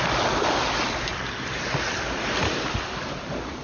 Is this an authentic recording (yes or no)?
yes